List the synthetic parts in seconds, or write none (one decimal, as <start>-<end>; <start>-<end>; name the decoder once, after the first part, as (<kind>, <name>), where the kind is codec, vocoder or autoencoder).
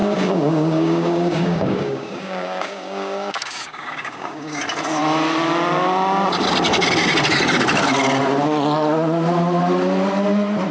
0.0-4.6 (codec, DAC)